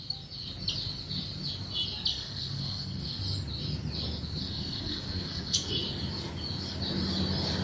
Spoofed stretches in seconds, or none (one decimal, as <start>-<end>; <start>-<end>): 2.1-3.2; 4.4-5.7

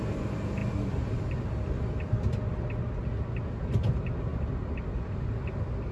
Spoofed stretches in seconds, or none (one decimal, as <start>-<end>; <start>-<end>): none

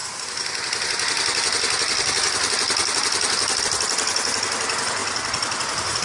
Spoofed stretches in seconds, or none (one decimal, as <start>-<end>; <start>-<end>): none

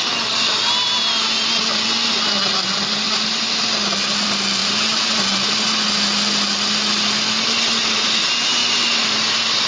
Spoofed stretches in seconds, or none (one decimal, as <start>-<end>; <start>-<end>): 4.6-5.5